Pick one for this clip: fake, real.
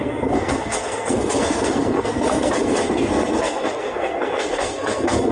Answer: fake